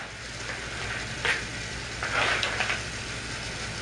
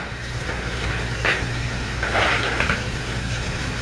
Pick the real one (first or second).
first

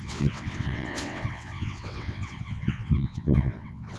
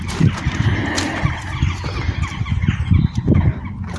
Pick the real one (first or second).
second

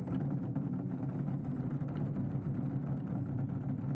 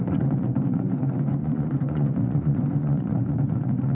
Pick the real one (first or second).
first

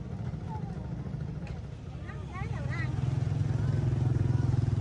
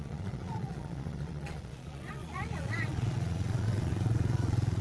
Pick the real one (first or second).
first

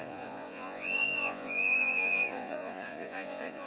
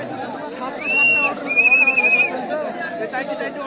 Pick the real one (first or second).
second